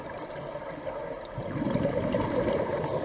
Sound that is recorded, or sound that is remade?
recorded